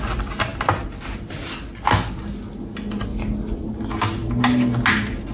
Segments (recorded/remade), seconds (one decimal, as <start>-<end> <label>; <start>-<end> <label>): 0.0-5.3 recorded